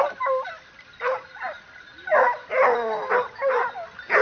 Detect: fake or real real